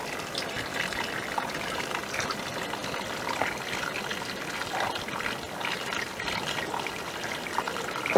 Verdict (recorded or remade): recorded